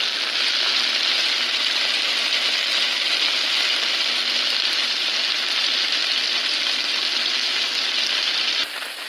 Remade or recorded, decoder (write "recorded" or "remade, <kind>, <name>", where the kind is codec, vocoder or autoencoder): recorded